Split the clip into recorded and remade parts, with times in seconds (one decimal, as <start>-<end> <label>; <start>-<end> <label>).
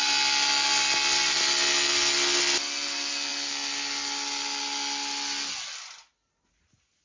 0.0-7.0 recorded